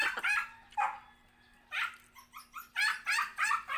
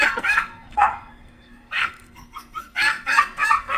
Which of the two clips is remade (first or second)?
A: second